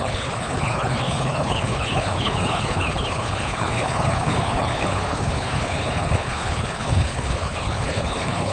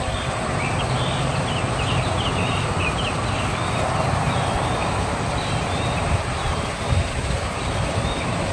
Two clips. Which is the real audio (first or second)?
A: second